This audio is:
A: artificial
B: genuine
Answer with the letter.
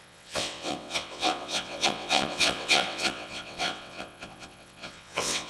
A